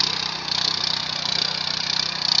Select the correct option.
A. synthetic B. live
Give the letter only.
B